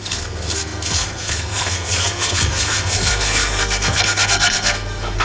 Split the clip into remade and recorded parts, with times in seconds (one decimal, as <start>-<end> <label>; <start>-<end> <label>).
0.0-5.2 remade